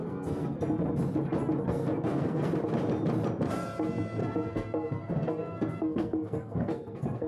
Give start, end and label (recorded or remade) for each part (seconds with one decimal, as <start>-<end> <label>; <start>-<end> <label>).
0.0-0.6 remade; 0.6-1.7 recorded; 1.7-2.5 remade; 2.5-4.2 recorded; 4.2-7.3 remade